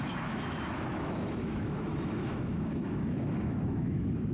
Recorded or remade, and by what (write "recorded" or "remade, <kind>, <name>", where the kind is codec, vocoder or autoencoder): remade, autoencoder, DAC-VAE